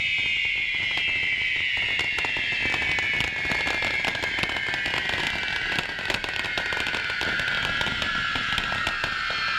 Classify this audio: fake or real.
real